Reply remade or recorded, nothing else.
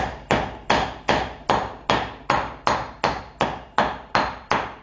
recorded